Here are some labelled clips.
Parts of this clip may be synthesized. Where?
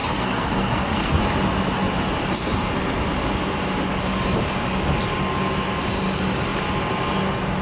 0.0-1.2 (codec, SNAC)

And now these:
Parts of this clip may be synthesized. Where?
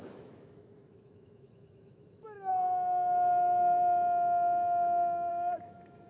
0.0-2.5 (autoencoder, DAC-VAE); 5.3-6.1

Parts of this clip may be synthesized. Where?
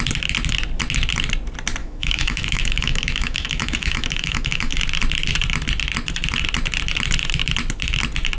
1.8-4.8 (autoencoder, DAC-VAE)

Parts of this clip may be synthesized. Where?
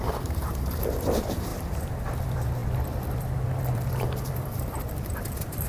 0.0-5.7 (vocoder, BigVGAN v2)